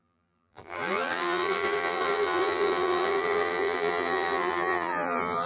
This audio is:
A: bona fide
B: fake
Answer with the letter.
B